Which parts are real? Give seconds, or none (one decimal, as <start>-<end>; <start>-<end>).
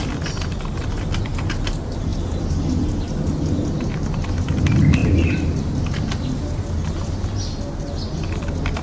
0.0-8.8